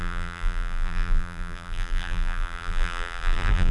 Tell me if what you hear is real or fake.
fake